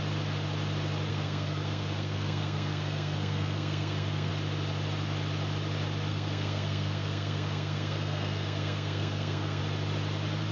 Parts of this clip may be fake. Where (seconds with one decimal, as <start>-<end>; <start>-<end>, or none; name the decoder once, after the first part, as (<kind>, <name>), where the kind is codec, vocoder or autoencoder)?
1.1-4.3 (codec, SNAC); 6.1-9.6